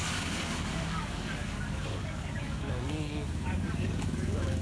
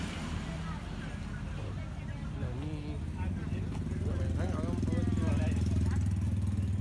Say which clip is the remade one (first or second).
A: first